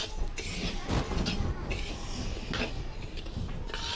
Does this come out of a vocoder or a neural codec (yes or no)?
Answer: no